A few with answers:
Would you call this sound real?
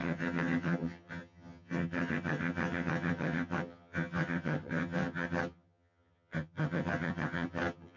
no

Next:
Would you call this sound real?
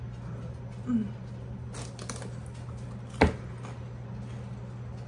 yes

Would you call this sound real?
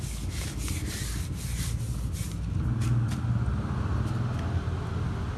yes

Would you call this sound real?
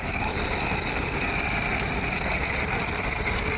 yes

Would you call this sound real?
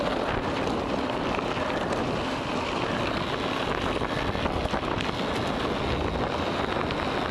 yes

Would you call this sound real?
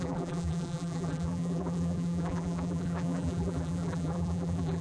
no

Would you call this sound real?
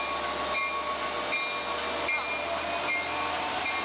yes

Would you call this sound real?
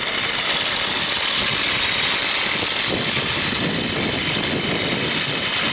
yes